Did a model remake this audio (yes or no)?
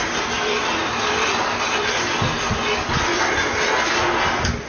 no